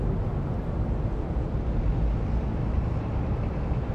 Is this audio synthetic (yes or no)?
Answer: no